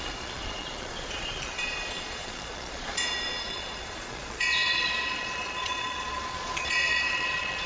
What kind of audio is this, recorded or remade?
remade